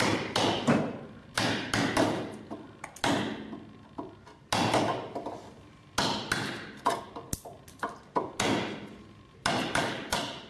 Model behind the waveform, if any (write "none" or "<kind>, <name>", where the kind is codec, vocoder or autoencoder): none